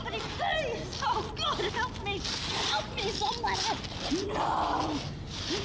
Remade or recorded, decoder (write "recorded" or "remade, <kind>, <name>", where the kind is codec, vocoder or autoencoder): recorded